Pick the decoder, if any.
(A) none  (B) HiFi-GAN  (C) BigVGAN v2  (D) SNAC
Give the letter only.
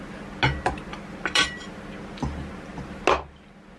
A